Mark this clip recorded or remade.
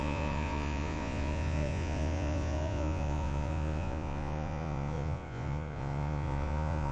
remade